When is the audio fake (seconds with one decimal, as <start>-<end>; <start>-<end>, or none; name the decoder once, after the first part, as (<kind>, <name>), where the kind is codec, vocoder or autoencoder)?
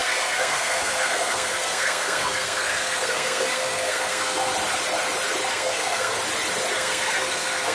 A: 0.0-4.5 (codec, SNAC); 5.5-6.1; 6.7-7.7